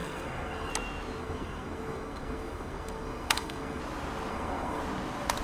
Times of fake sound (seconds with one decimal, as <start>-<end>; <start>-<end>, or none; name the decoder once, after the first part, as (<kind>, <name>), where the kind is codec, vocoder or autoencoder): 0.0-0.7 (codec, SNAC); 1.2-3.8; 4.3-4.8